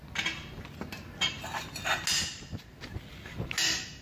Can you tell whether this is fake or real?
real